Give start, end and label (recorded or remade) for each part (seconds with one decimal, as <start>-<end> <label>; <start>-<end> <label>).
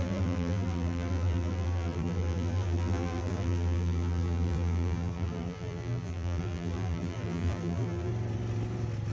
0.0-8.1 remade; 8.1-9.1 recorded